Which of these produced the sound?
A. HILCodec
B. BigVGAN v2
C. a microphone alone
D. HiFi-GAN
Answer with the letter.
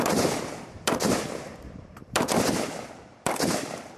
B